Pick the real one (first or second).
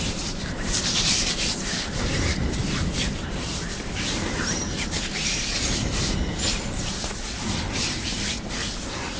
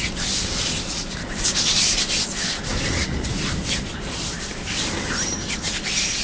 second